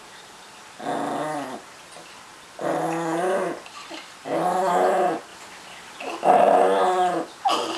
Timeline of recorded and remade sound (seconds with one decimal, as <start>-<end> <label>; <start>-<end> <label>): 0.0-7.8 recorded